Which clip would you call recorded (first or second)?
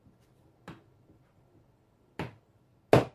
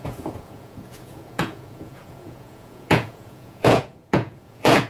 first